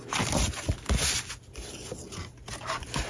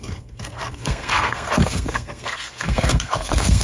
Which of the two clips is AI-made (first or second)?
second